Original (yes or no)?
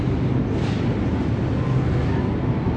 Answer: yes